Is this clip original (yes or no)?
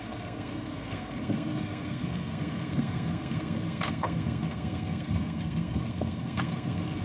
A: no